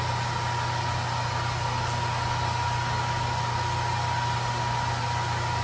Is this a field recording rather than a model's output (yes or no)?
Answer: yes